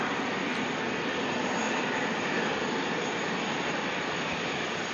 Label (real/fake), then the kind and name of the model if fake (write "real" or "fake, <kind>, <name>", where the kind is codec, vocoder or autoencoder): real